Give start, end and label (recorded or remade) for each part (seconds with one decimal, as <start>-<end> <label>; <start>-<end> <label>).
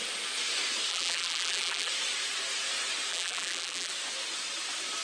0.0-0.9 recorded; 0.9-1.9 remade; 1.9-3.1 recorded; 3.1-3.9 remade; 3.9-5.0 recorded